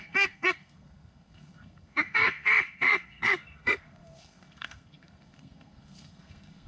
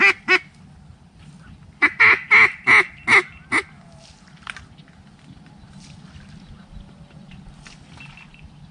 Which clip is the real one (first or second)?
second